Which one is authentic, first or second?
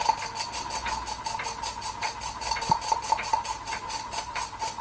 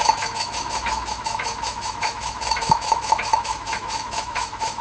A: first